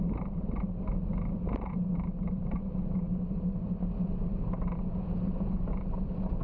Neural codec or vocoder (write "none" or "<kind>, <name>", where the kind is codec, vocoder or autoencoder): none